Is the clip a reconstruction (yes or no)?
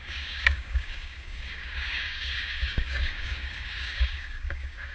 yes